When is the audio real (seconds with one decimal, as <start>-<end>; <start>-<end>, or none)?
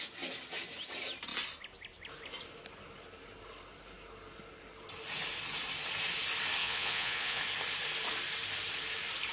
0.0-6.6; 7.4-9.3